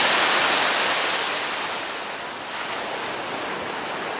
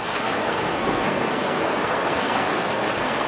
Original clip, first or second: first